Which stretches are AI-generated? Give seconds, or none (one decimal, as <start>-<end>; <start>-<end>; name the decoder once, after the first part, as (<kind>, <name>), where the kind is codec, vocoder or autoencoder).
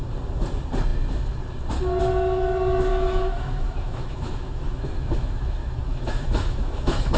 2.9-7.2 (autoencoder, DAC-VAE)